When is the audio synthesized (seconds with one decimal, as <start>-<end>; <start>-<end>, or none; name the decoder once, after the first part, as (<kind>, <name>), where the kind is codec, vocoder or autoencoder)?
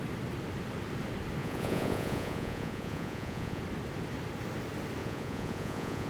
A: 1.4-3.6 (vocoder, Vocos); 5.0-6.1